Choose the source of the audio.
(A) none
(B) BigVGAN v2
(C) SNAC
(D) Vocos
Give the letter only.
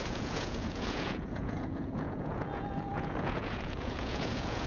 D